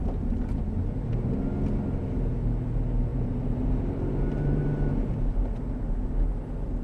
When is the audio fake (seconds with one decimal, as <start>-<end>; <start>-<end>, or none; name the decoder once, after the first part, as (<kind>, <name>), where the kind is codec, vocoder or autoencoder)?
3.1-4.9 (vocoder, BigVGAN v2)